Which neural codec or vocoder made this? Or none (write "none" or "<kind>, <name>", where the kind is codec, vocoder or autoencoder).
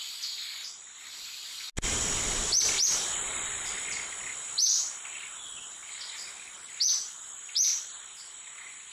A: none